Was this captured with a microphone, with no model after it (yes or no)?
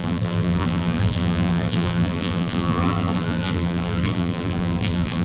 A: no